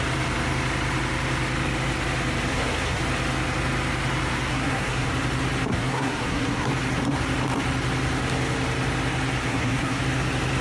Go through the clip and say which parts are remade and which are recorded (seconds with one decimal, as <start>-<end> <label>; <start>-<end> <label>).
0.0-2.5 recorded; 2.5-3.0 remade; 3.0-4.5 recorded; 4.5-5.1 remade; 5.1-5.7 recorded; 5.7-6.7 remade; 6.7-9.4 recorded; 9.4-10.0 remade; 10.0-10.6 recorded